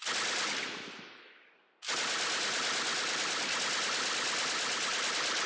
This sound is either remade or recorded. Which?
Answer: recorded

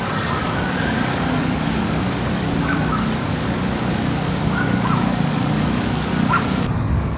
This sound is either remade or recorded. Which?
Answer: remade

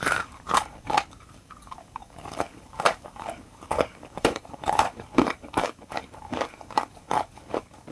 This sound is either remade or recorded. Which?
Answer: remade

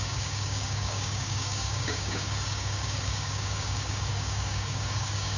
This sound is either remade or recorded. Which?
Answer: remade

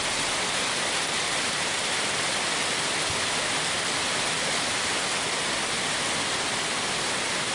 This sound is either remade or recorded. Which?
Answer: recorded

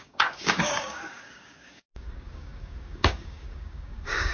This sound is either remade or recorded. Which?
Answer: remade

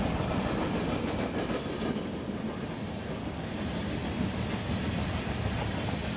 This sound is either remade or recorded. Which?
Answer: recorded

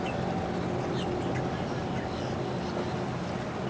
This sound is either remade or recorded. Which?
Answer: recorded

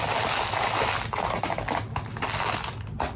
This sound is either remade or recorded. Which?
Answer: recorded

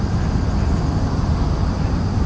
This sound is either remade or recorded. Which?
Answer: recorded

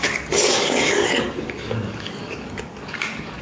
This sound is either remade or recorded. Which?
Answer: remade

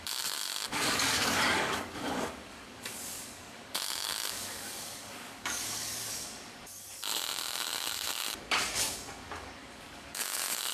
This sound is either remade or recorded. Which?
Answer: remade